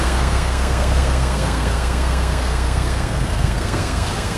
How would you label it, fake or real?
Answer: fake